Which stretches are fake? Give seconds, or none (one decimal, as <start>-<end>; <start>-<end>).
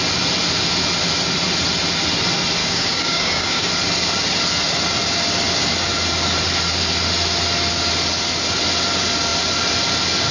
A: 2.6-3.7